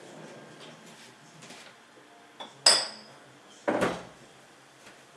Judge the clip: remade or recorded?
recorded